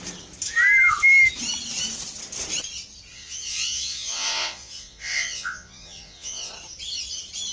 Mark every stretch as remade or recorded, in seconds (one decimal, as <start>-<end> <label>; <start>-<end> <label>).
0.0-3.1 recorded; 3.1-6.5 remade; 6.5-7.5 recorded

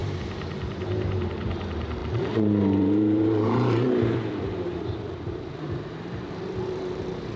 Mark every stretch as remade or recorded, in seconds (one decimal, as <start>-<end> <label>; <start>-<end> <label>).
0.0-1.3 recorded; 1.3-7.4 remade

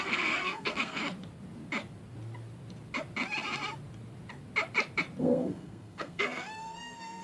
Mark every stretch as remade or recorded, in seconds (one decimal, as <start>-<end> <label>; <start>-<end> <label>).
0.0-1.0 remade; 1.0-5.2 recorded; 5.2-7.2 remade